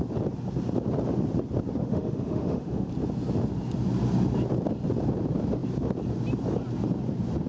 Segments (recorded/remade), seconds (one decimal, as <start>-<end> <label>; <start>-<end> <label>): 0.0-1.8 recorded; 1.8-2.9 remade; 2.9-7.5 recorded